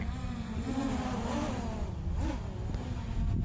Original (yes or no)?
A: yes